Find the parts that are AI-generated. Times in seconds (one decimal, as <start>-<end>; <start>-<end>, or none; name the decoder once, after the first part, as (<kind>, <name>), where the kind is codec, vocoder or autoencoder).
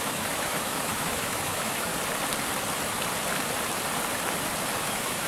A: 0.0-1.9 (autoencoder, DAC-VAE); 4.8-5.3